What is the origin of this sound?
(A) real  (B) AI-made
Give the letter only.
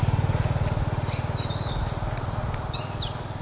A